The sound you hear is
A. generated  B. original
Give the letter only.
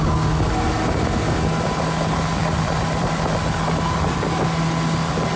B